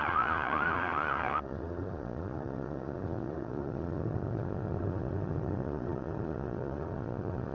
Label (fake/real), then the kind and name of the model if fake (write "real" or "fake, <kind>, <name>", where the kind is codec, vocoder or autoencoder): fake, vocoder, Vocos